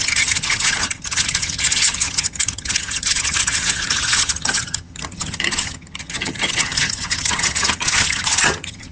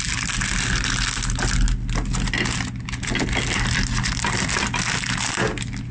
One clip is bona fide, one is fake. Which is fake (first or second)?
first